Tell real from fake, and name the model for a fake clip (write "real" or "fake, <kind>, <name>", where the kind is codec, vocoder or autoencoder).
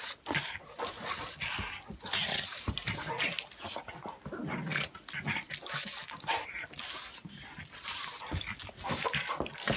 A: real